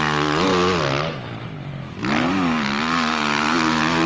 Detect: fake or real real